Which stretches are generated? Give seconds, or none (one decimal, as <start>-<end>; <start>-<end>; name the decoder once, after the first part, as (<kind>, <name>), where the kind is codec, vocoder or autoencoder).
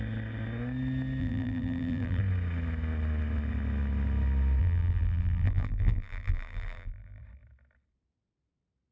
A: 1.2-2.2 (vocoder, BigVGAN v2); 4.6-7.2